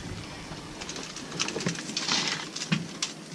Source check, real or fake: real